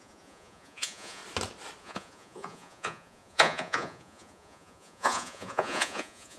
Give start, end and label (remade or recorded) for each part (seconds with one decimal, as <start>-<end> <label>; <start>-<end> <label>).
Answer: 0.0-1.2 remade; 1.2-1.8 recorded; 1.8-6.4 remade